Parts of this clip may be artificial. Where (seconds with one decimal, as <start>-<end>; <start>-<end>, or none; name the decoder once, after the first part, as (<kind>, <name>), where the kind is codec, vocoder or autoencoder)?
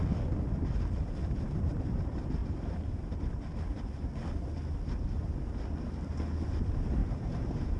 2.4-3.4 (vocoder, BigVGAN v2); 7.0-7.8